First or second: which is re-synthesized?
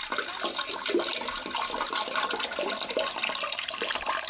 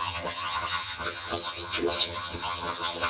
second